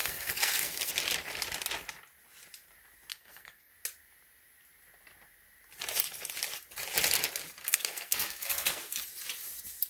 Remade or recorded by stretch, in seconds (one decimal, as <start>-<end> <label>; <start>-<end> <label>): 0.0-0.9 remade; 0.9-3.1 recorded; 3.1-3.7 remade; 3.7-7.6 recorded; 7.6-9.0 remade; 9.0-9.9 recorded